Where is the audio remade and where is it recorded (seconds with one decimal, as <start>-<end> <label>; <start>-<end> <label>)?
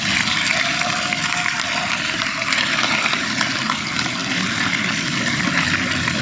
0.0-6.2 recorded